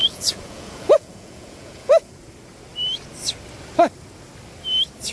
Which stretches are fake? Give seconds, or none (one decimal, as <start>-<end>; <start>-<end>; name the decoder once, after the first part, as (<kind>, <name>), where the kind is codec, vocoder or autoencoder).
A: 0.0-2.1 (vocoder, Vocos)